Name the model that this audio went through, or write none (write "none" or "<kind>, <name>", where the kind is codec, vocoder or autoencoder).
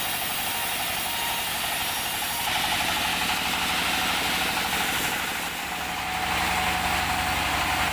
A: none